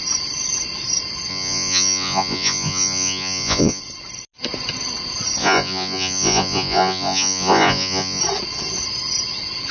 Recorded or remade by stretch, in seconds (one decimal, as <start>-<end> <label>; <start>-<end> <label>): 0.0-1.3 recorded; 1.3-3.8 remade; 3.8-5.4 recorded; 5.4-8.2 remade; 8.2-9.7 recorded